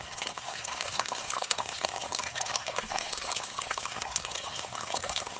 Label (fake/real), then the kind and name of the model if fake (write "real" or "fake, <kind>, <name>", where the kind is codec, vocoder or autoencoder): fake, codec, SNAC